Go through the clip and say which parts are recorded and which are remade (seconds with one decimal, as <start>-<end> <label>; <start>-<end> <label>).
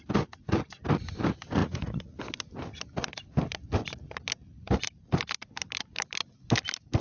0.0-1.6 recorded; 1.6-2.2 remade; 2.2-7.0 recorded